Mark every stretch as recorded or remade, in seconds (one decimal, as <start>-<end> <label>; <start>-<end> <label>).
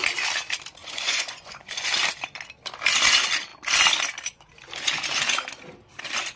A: 0.0-0.8 recorded; 0.8-1.9 remade; 1.9-6.4 recorded